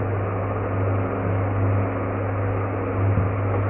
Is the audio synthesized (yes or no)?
no